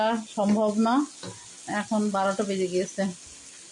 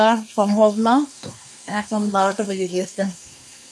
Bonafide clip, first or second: first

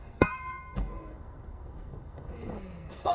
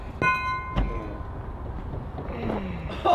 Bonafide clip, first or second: second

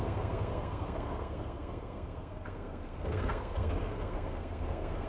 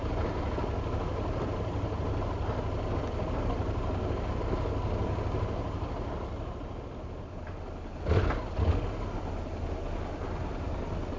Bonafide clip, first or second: second